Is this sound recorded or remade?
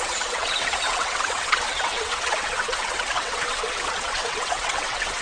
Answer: remade